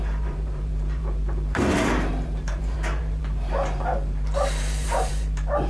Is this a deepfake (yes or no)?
yes